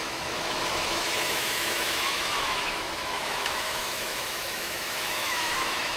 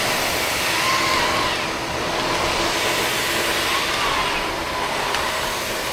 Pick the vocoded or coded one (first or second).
first